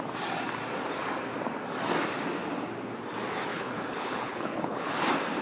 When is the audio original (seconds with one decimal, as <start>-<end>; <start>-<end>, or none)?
0.0-3.5; 4.9-5.4